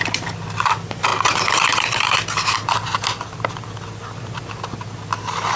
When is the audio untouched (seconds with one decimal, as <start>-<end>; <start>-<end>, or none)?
0.0-5.6